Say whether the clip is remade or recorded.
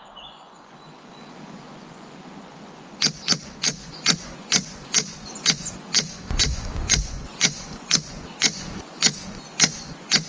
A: remade